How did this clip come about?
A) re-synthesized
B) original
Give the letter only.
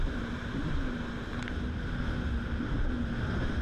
B